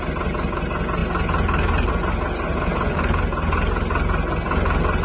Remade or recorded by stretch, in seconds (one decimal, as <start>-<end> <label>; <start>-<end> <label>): 0.0-5.0 recorded